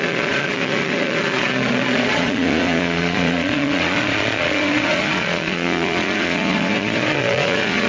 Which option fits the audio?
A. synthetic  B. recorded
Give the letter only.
A